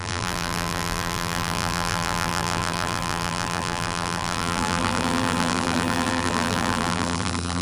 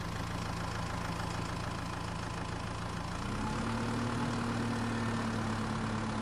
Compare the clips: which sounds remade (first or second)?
first